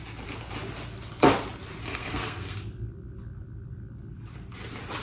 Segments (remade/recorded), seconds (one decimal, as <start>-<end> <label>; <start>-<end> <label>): 0.0-1.8 recorded; 1.8-2.6 remade; 2.6-5.0 recorded